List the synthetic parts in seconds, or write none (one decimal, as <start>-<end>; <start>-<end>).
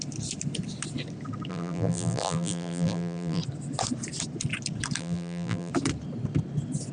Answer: 1.5-3.4; 5.0-5.7